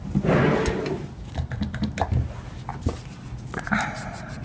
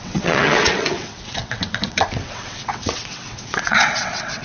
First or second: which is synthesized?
second